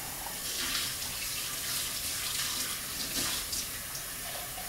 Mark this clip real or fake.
real